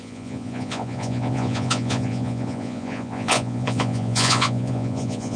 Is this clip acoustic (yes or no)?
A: no